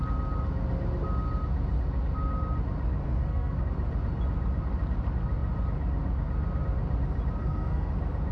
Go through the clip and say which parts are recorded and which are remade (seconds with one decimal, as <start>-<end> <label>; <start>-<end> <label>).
0.0-3.0 recorded; 3.0-3.6 remade; 3.6-7.4 recorded; 7.4-7.9 remade; 7.9-8.3 recorded